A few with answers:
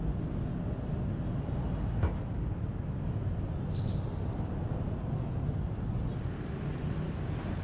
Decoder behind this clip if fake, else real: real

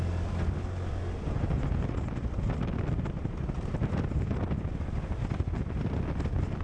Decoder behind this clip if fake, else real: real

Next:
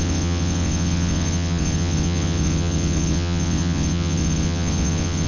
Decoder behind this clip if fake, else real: fake, vocoder, WaveNeXt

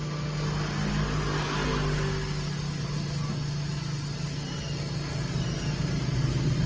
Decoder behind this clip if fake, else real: real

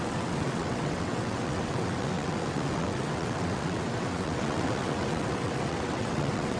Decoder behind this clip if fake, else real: fake, vocoder, WaveNeXt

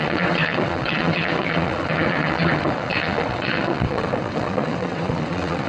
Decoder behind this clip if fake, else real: fake, vocoder, WaveNeXt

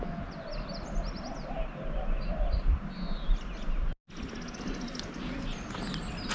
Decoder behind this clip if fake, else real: real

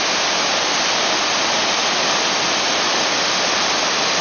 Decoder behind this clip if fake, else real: real